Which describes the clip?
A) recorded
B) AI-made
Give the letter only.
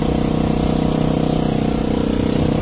A